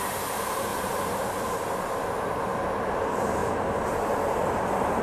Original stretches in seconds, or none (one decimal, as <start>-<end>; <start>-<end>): 0.0-0.7; 1.2-5.0